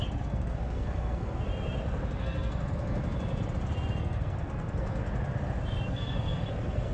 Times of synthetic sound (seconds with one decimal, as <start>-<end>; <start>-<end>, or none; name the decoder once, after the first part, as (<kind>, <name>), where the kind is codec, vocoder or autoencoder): 0.0-1.5 (codec, SNAC); 2.2-3.0; 4.0-5.0; 5.9-6.9